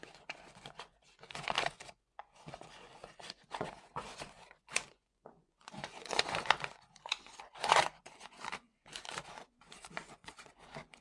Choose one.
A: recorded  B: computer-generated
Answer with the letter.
B